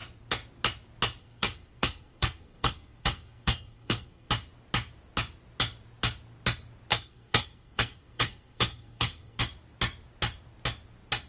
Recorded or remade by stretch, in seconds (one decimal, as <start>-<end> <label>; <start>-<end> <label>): 0.0-1.2 recorded; 1.2-4.3 remade; 4.3-6.9 recorded; 6.9-9.4 remade; 9.4-11.3 recorded